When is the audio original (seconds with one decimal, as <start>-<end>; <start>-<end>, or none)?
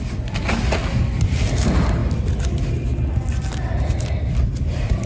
0.0-5.1